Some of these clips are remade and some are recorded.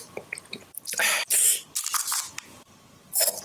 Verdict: recorded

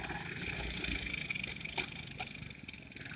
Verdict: recorded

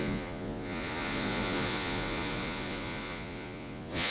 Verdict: remade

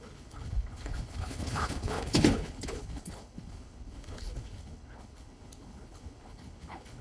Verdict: remade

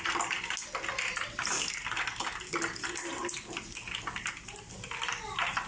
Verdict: recorded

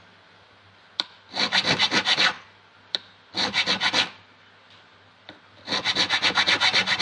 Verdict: recorded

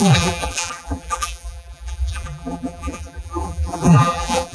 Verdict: remade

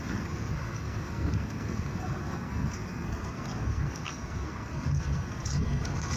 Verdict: remade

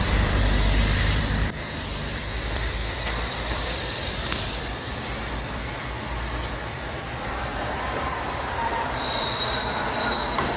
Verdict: remade